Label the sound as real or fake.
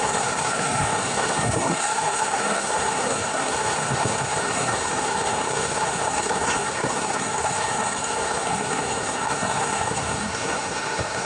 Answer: fake